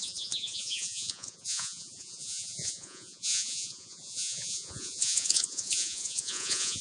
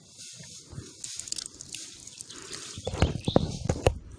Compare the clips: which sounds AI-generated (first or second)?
first